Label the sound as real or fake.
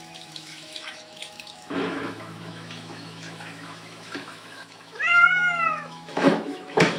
fake